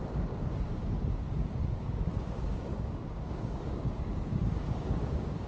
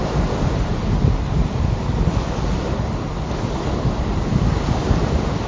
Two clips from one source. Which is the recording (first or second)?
second